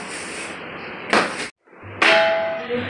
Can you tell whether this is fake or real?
real